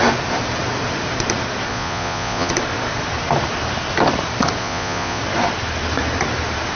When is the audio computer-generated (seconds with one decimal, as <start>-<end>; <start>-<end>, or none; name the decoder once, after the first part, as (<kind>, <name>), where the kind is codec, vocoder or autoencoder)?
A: 1.7-2.5 (vocoder, Vocos); 4.6-5.2